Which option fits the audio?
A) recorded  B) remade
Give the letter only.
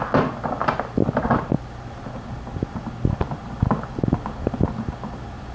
A